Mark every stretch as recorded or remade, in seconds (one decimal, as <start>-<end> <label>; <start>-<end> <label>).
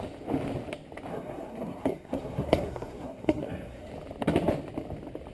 0.0-1.1 recorded; 1.1-3.9 remade; 3.9-5.3 recorded